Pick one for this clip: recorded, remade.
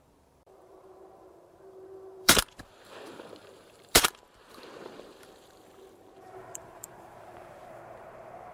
remade